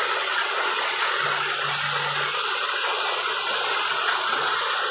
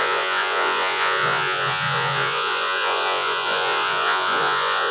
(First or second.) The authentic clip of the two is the first